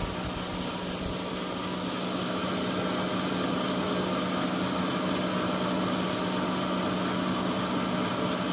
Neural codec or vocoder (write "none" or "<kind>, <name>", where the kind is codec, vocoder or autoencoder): none